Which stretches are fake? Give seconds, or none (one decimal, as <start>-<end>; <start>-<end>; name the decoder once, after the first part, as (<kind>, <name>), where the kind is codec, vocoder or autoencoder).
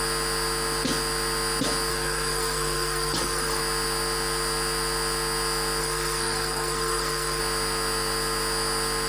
1.9-3.6 (codec, SNAC); 5.8-7.4